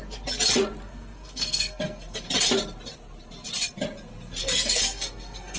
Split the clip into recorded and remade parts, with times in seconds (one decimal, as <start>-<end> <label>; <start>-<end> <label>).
0.0-0.8 recorded; 0.8-2.3 remade; 2.3-4.4 recorded; 4.4-5.6 remade